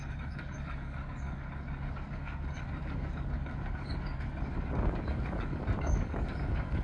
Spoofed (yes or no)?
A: yes